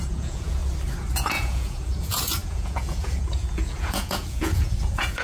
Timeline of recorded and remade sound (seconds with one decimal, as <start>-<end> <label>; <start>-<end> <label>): 0.0-0.6 remade; 0.6-1.2 recorded; 1.2-5.2 remade